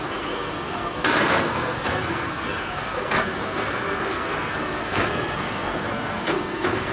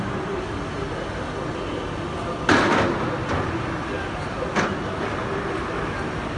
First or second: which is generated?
first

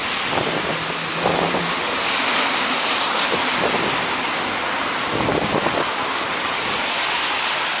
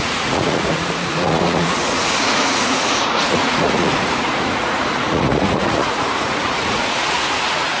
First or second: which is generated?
second